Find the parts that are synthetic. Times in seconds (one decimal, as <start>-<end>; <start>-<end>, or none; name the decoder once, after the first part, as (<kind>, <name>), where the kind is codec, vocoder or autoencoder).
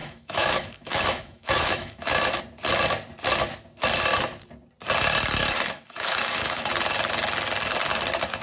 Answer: 0.0-2.4 (autoencoder, DAC-VAE); 5.4-6.7